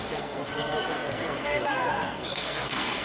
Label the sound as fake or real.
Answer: fake